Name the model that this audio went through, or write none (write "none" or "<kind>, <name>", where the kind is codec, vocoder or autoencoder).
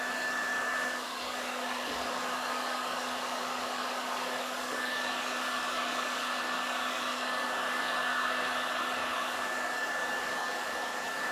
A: codec, DAC